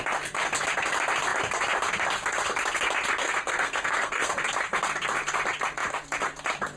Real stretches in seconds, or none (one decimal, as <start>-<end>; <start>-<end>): 0.0-3.2; 4.3-6.8